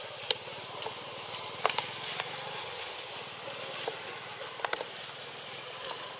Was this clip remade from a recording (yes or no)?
no